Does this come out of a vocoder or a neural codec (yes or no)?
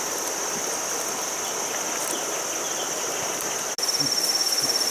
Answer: no